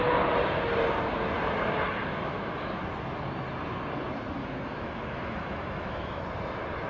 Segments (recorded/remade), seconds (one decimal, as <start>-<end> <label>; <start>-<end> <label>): 0.0-2.0 recorded; 2.0-2.8 remade; 2.8-4.4 recorded; 4.4-6.2 remade; 6.2-6.9 recorded